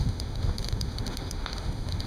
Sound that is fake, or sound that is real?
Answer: fake